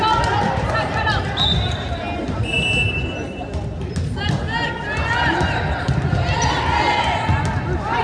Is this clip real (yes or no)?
yes